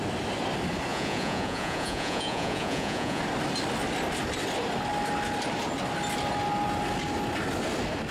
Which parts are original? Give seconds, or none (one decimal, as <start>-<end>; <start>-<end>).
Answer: 0.0-0.9; 3.2-8.1